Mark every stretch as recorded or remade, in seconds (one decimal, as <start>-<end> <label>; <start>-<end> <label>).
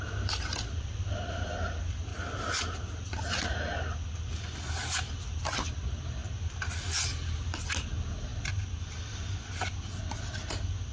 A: 0.0-8.3 recorded; 8.3-10.0 remade; 10.0-10.9 recorded